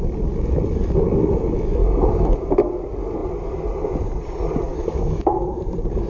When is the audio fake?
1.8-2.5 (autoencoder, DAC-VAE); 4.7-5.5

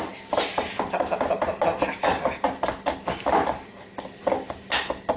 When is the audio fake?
none

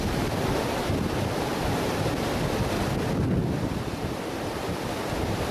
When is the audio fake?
3.4-5.5 (vocoder, BigVGAN v2)

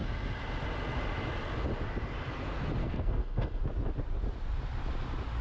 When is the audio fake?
2.8-3.6 (codec, SNAC)

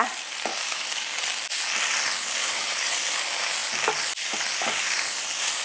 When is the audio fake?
0.5-1.2 (codec, DAC); 2.4-2.9

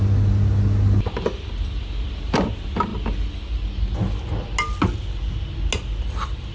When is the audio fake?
none

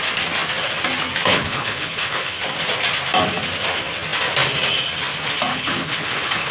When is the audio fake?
1.3-2.4 (codec, HILCodec); 5.5-6.5

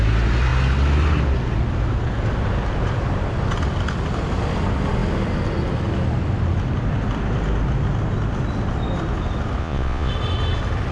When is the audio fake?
9.6-10.1 (vocoder, Vocos)